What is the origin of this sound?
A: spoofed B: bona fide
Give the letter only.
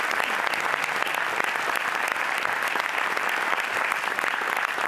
A